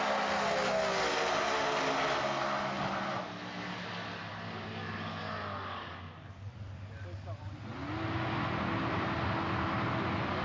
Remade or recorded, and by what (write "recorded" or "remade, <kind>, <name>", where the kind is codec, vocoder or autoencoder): recorded